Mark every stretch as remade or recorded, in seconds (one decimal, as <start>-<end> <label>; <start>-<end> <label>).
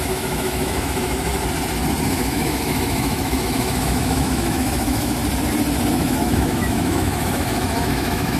0.0-1.3 remade; 1.3-2.0 recorded; 2.0-5.2 remade; 5.2-5.9 recorded; 5.9-8.4 remade